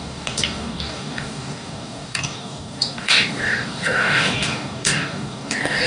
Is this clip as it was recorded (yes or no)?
no